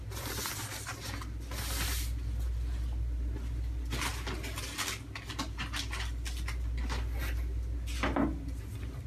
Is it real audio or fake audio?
real